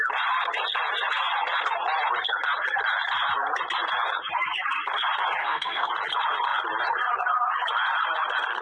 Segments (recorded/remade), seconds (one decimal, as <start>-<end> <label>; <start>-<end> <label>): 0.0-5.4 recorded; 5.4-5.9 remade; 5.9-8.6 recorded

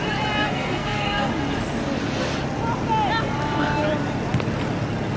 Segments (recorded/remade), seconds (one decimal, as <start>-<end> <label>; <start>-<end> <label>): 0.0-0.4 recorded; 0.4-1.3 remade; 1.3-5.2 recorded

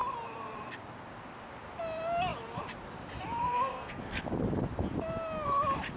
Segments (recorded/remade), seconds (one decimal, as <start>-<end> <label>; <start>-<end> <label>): 0.0-3.4 recorded; 3.4-4.0 remade; 4.0-6.0 recorded

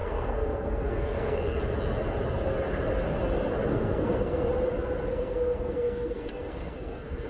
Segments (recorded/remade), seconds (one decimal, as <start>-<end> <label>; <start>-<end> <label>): 0.0-1.6 remade; 1.6-3.7 recorded; 3.7-4.5 remade; 4.5-5.1 recorded; 5.1-7.3 remade